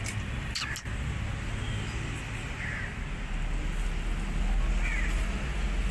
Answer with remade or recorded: recorded